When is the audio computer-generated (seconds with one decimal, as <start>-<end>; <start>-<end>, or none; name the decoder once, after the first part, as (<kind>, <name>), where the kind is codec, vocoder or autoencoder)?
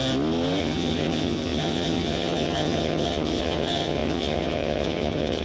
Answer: 0.6-5.4 (vocoder, HiFi-GAN)